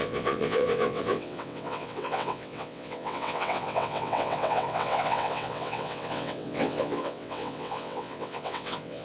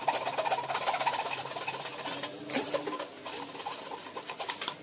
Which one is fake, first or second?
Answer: first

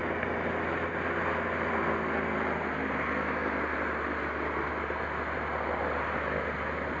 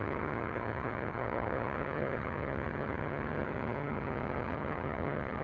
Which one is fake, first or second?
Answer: second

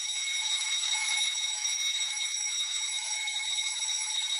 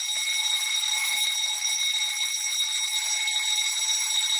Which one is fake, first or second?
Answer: first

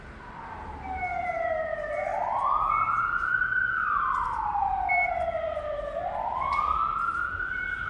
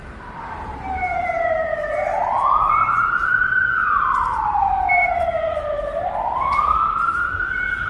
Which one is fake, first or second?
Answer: second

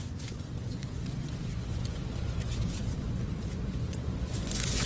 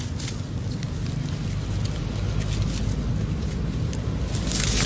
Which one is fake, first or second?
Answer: first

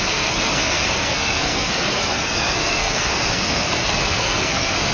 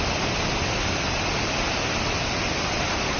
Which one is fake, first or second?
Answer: first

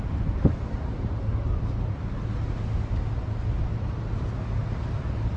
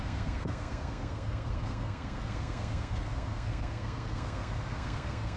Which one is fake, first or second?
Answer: second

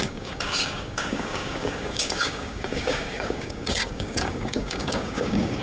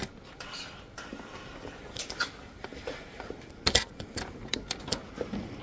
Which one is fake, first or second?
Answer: first